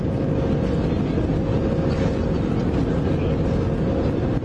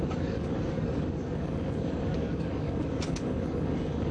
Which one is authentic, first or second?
first